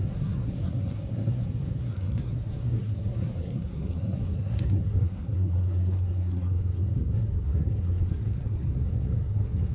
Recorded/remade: remade